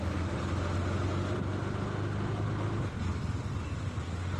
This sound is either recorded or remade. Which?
recorded